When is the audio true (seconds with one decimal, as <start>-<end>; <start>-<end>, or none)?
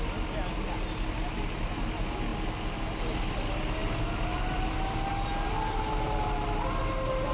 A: 0.0-7.3